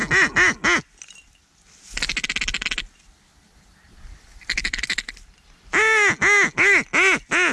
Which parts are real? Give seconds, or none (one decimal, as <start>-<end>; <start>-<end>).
0.0-7.5

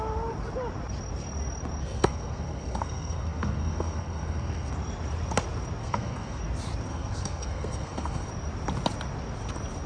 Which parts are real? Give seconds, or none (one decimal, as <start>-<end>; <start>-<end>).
0.0-1.8; 4.7-5.8; 6.4-6.9; 8.3-9.9

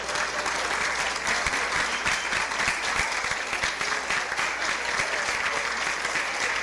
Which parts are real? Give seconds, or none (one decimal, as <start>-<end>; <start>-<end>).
0.0-6.6